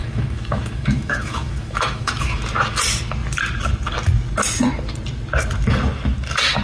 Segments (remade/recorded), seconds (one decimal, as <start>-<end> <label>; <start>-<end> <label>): 0.0-2.4 remade; 2.4-6.6 recorded